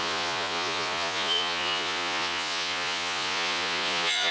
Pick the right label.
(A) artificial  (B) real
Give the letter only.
A